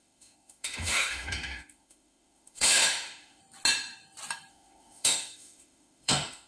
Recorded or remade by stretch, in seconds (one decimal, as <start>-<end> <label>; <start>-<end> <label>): 0.0-3.4 remade; 3.4-4.5 recorded; 4.5-6.5 remade